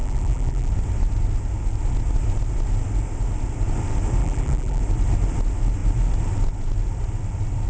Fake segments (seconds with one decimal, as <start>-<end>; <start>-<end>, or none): 0.0-0.7; 4.2-4.8